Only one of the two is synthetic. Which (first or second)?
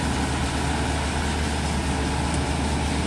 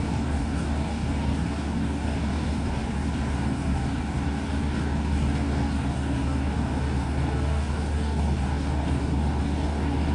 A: second